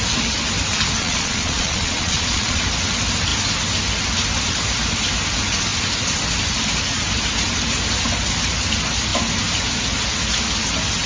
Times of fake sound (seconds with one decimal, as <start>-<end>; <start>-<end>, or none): 1.0-2.6